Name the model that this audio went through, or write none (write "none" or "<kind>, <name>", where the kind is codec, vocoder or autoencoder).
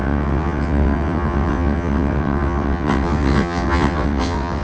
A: vocoder, WaveNeXt